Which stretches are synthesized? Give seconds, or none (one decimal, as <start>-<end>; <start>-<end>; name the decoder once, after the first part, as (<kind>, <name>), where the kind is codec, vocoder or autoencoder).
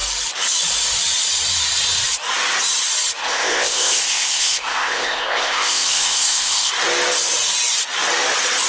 3.2-6.7 (codec, ZipCodec)